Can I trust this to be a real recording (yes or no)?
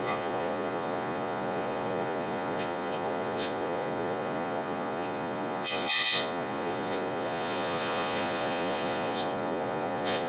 no